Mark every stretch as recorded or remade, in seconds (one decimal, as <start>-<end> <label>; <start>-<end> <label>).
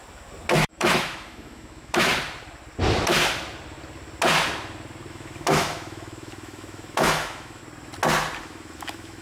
0.0-0.6 recorded; 0.6-2.1 remade; 2.1-5.1 recorded; 5.1-7.6 remade; 7.6-8.4 recorded; 8.4-9.2 remade